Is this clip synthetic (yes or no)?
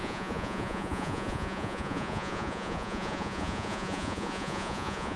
yes